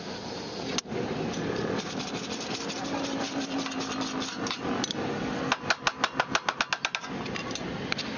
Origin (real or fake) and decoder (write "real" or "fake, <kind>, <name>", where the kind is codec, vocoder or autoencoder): real